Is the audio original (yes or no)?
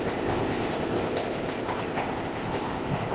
no